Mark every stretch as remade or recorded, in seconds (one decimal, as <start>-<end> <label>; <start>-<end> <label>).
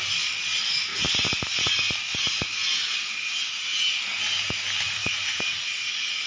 0.0-5.0 recorded; 5.0-6.3 remade